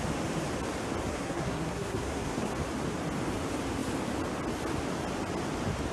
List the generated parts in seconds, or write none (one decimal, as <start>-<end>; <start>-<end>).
1.1-2.5